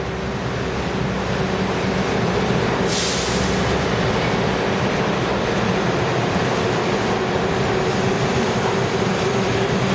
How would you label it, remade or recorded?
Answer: recorded